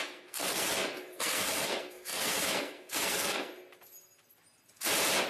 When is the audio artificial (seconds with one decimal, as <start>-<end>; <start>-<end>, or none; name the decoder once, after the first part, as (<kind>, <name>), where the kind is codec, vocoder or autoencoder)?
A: 0.0-3.5 (codec, SNAC)